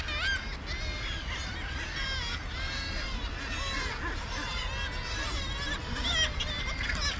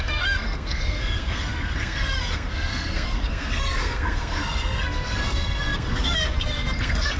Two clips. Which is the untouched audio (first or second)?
first